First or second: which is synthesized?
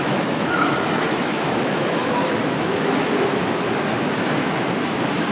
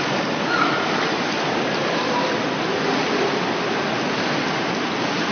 first